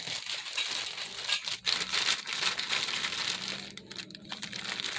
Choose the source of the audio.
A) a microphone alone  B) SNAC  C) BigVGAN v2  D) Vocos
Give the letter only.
A